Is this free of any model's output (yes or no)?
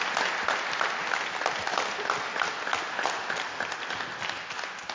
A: yes